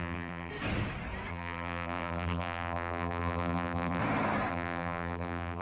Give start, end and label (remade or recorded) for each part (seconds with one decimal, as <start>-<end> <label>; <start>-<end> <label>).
0.0-0.5 remade; 0.5-1.3 recorded; 1.3-4.0 remade; 4.0-4.5 recorded; 4.5-5.6 remade